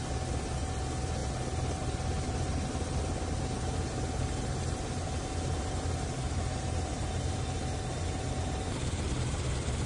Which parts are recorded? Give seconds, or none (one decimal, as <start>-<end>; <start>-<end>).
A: 0.0-9.9